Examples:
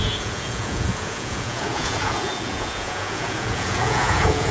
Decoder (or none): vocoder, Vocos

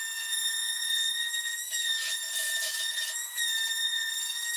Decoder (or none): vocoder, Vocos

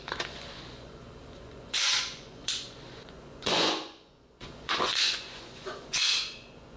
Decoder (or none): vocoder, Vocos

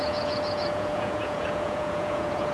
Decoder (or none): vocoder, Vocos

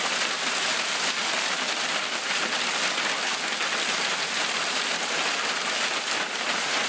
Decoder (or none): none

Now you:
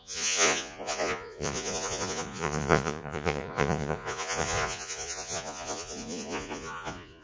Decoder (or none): vocoder, Vocos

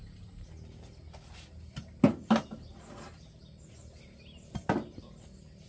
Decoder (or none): none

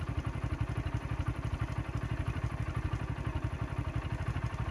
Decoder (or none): none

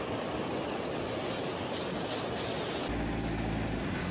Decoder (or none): none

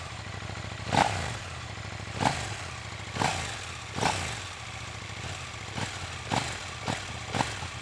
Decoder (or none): none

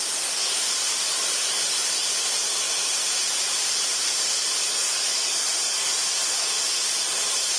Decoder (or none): none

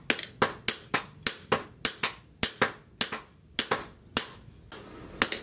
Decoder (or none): none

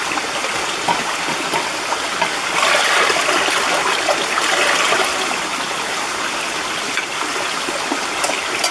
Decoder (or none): none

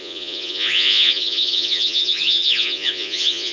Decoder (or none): vocoder, Vocos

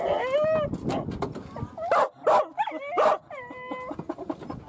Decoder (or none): none